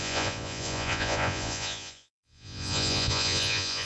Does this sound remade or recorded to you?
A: remade